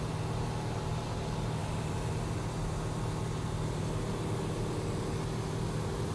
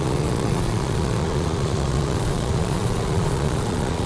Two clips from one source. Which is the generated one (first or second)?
second